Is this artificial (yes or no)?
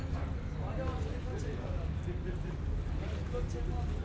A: no